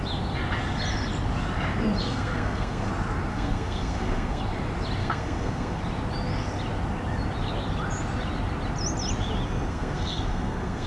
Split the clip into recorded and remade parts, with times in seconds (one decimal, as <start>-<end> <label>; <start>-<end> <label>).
0.0-2.0 recorded; 2.0-2.9 remade; 2.9-3.3 recorded; 3.3-4.4 remade; 4.4-5.0 recorded; 5.0-5.8 remade; 5.8-9.7 recorded; 9.7-10.9 remade